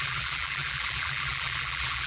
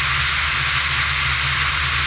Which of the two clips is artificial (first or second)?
first